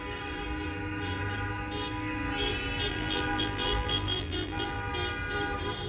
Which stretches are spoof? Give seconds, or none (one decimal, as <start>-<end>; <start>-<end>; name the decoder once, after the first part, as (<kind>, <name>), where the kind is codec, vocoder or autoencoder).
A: 2.9-4.9 (vocoder, BigVGAN v2)